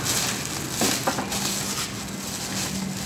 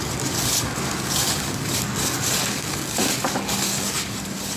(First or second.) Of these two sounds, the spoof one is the second